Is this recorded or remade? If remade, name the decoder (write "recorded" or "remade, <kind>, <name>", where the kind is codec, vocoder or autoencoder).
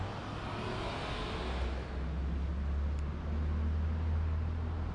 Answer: recorded